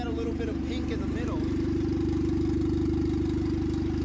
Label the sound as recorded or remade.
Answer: recorded